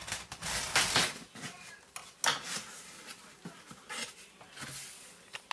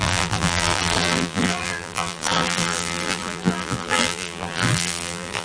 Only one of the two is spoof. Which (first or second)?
second